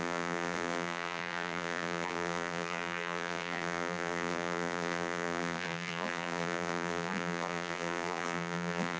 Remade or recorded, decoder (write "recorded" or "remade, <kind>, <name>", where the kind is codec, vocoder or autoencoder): remade, vocoder, BigVGAN v2